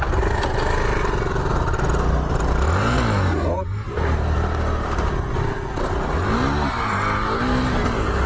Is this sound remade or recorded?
recorded